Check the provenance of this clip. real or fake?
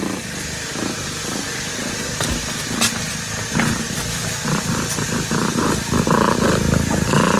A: real